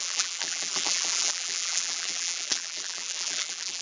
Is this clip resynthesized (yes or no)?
yes